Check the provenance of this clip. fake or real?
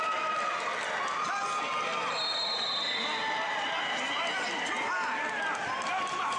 real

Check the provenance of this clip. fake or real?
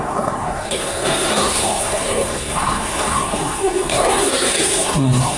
fake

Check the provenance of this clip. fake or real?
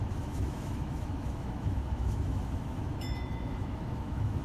fake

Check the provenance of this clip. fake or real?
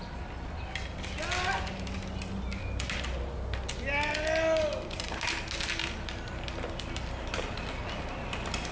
real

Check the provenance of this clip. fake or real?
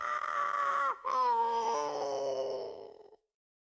fake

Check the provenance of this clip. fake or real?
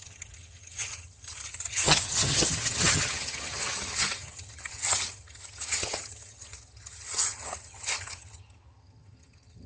fake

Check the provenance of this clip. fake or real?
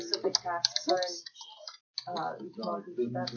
real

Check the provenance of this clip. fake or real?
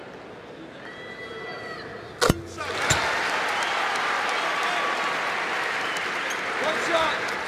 real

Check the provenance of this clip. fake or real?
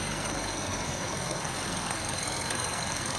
fake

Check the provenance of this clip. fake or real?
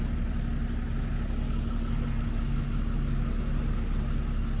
real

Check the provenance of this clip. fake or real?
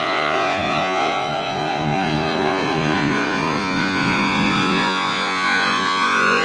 fake